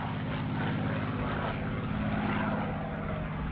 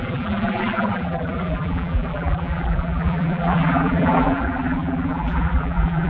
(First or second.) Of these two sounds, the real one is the first